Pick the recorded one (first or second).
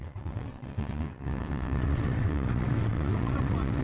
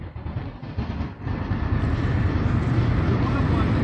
second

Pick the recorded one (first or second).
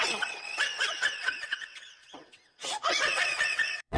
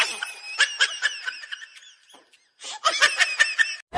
second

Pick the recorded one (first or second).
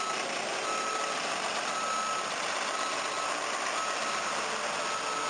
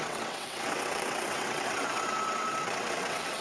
first